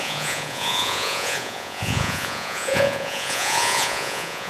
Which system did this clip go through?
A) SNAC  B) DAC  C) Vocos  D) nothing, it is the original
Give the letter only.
C